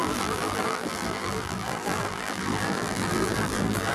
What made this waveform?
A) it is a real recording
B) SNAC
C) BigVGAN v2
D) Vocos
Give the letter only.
C